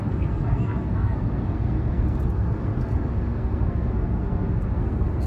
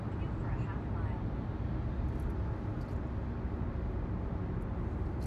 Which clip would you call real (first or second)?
second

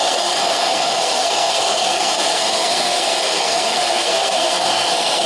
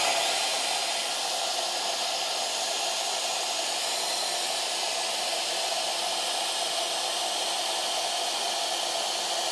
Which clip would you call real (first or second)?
second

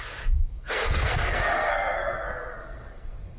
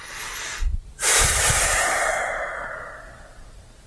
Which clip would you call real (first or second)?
second